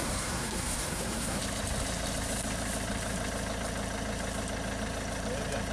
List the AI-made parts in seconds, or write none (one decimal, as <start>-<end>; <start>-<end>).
0.0-1.4